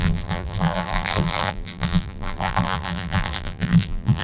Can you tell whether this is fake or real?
fake